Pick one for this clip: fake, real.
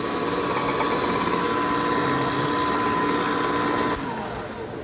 real